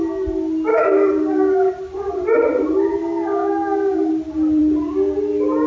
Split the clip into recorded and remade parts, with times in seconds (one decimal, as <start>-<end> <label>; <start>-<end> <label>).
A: 0.0-0.7 recorded; 0.7-1.7 remade; 1.7-3.0 recorded; 3.0-4.1 remade; 4.1-5.7 recorded